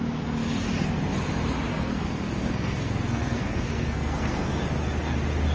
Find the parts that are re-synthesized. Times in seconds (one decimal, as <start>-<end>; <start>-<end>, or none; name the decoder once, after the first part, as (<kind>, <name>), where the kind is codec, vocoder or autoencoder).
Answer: 1.7-4.6 (codec, SNAC)

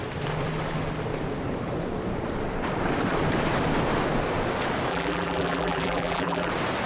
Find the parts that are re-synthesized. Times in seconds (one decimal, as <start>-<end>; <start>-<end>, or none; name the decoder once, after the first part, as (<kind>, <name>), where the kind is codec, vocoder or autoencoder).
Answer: 4.9-6.5 (vocoder, BigVGAN v2)

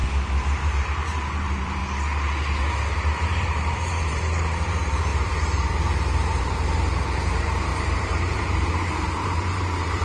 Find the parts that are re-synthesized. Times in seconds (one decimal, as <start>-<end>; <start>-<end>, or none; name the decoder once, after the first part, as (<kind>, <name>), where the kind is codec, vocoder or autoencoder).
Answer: 0.0-1.8 (vocoder, BigVGAN v2); 2.8-10.0

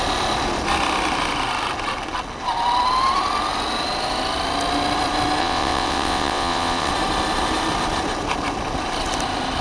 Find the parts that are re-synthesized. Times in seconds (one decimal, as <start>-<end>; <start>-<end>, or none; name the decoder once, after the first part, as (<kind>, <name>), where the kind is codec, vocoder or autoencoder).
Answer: 5.4-6.9 (vocoder, WaveNeXt)

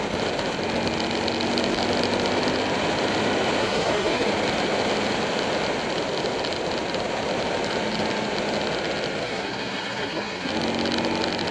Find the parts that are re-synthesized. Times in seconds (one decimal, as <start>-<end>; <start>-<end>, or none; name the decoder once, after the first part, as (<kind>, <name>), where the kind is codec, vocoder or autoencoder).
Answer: 3.6-4.3 (codec, SNAC); 9.2-10.5